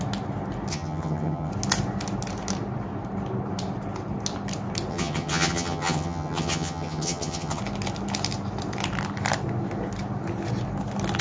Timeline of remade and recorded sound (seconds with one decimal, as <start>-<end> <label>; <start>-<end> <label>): 0.0-0.7 recorded; 0.7-1.5 remade; 1.5-4.9 recorded; 4.9-7.6 remade; 7.6-11.2 recorded